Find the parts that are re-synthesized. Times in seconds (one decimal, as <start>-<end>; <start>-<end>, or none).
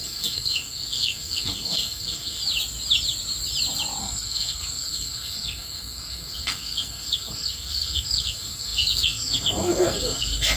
0.0-2.4; 4.0-10.6